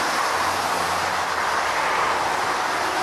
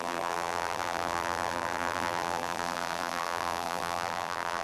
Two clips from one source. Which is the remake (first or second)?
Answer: second